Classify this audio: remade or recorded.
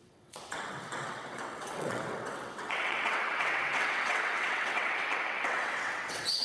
remade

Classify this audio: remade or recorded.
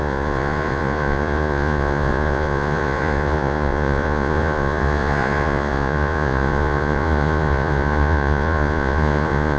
remade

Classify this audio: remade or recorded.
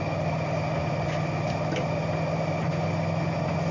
recorded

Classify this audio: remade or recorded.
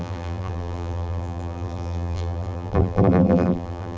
remade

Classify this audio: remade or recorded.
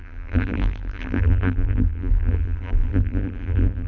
remade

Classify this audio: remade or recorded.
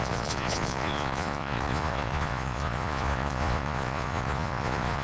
remade